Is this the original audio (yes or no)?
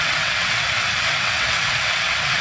no